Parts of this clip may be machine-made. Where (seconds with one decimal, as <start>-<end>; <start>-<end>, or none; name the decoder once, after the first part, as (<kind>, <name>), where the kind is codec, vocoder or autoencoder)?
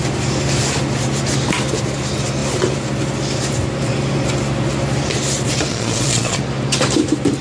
5.7-6.4 (vocoder, Vocos)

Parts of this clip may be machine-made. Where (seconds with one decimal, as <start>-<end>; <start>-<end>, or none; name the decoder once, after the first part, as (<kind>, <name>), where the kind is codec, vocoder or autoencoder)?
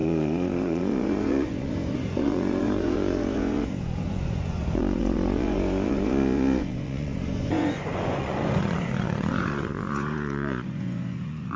0.0-11.6 (vocoder, Vocos)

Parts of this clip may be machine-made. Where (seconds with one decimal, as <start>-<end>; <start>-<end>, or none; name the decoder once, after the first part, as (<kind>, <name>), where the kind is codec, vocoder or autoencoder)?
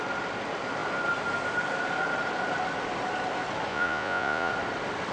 3.7-4.5 (vocoder, Vocos)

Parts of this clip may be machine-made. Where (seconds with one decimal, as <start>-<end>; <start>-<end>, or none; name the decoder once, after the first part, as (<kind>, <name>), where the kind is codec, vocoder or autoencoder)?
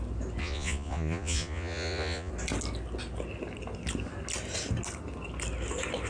0.4-2.3 (vocoder, Vocos)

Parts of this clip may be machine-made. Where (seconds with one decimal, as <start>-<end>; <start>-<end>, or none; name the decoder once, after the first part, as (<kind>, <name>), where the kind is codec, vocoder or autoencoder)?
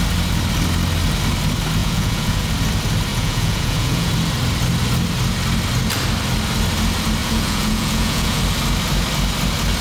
1.8-2.5 (vocoder, Vocos); 3.1-4.1; 7.2-8.4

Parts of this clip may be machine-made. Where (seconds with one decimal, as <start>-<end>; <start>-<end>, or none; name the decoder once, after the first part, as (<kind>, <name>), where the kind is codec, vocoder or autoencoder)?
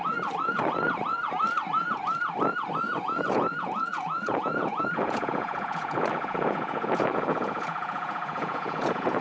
3.0-9.2 (vocoder, Vocos)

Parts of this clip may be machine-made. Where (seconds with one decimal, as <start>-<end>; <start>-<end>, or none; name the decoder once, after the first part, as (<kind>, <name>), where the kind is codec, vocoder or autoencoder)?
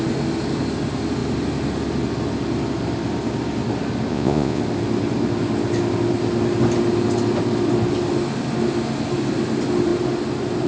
4.1-4.6 (vocoder, Vocos)